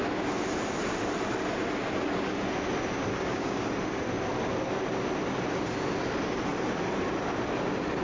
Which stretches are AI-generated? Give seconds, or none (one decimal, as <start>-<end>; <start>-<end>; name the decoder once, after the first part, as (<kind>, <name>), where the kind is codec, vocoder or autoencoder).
3.1-3.7 (codec, DAC)